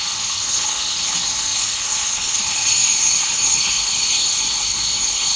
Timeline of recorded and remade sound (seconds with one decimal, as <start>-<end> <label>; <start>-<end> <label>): 0.0-5.4 remade